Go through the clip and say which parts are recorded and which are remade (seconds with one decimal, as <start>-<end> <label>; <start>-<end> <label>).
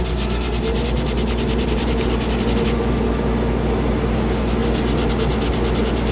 0.0-6.1 recorded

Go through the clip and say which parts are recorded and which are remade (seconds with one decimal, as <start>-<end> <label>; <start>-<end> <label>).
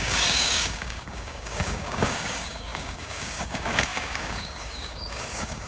0.0-5.7 remade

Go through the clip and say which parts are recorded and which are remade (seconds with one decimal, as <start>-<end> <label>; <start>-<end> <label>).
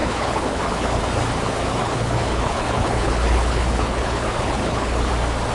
0.0-1.0 remade; 1.0-1.8 recorded; 1.8-5.1 remade; 5.1-5.5 recorded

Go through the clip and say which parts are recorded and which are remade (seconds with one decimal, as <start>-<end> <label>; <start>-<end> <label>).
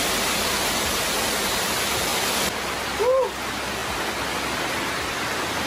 0.0-5.7 recorded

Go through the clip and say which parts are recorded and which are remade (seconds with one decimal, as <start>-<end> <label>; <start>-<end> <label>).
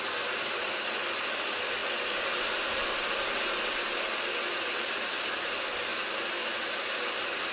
0.0-7.5 recorded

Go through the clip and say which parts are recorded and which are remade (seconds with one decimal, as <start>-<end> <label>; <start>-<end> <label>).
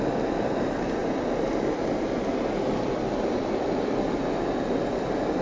0.0-1.0 recorded; 1.0-4.2 remade; 4.2-5.4 recorded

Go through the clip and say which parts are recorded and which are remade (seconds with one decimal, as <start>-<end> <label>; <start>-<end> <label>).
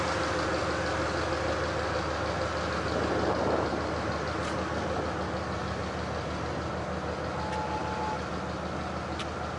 0.0-9.6 recorded